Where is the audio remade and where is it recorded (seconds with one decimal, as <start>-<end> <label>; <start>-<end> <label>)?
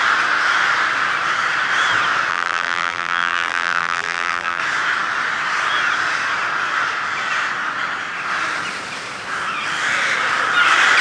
0.0-2.3 recorded; 2.3-4.6 remade; 4.6-11.0 recorded